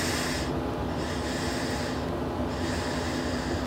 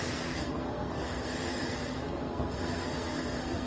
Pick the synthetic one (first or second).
second